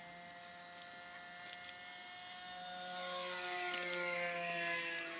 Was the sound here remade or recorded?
recorded